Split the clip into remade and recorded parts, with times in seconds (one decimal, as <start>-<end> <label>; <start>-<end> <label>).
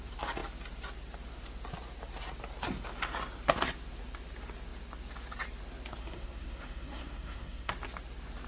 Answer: 0.0-6.0 recorded; 6.0-7.7 remade; 7.7-8.5 recorded